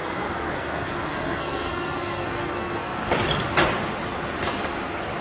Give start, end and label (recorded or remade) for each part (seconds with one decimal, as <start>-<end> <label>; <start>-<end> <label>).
0.0-3.1 remade; 3.1-5.2 recorded